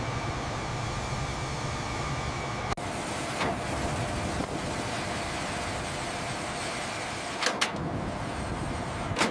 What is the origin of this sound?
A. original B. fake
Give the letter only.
A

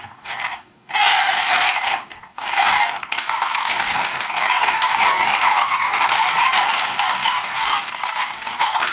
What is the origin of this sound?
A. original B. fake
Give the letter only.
B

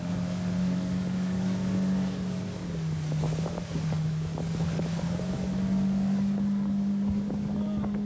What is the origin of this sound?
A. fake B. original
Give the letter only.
A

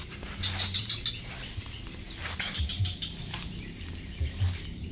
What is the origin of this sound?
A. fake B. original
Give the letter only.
B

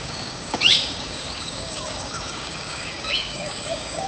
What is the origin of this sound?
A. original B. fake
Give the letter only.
B